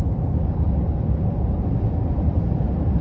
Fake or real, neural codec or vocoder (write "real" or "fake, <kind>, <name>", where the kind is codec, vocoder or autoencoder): real